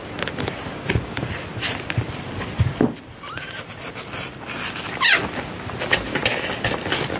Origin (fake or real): real